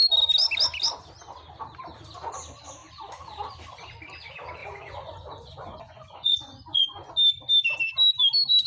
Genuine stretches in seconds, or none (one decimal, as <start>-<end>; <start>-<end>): 0.0-4.6; 7.1-8.7